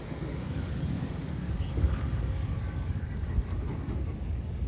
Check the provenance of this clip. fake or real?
fake